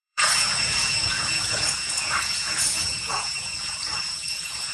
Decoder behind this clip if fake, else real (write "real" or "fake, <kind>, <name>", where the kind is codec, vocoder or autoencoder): fake, vocoder, Vocos